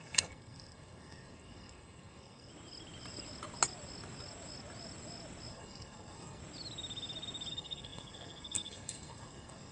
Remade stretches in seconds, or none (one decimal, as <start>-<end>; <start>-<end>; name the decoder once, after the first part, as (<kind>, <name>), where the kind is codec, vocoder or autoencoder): 0.0-2.5 (codec, SNAC); 5.5-6.4; 7.5-9.7